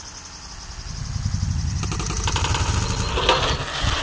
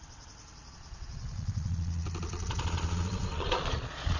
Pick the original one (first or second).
first